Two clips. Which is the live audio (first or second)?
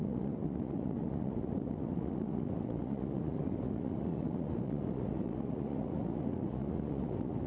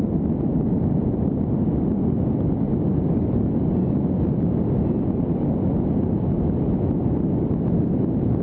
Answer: second